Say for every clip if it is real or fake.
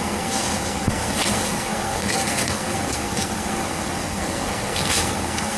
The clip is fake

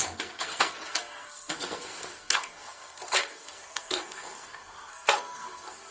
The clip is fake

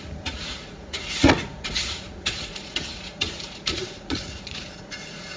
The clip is fake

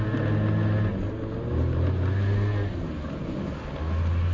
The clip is real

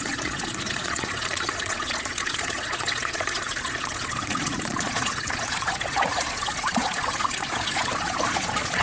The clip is fake